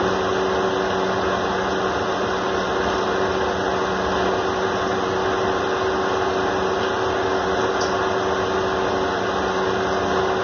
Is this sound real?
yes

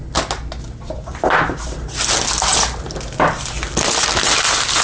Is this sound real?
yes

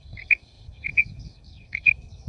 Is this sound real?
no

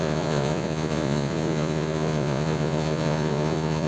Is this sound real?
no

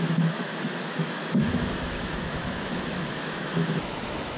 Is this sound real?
no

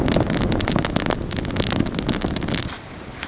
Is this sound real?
yes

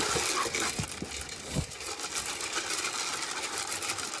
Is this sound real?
yes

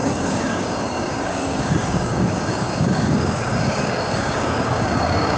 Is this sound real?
no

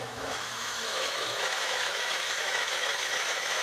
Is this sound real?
no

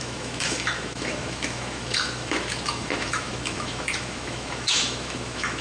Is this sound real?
no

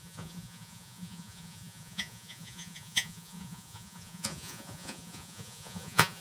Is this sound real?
no